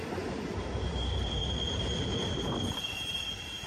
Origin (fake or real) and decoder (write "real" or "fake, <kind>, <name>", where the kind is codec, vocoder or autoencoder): fake, vocoder, BigVGAN v2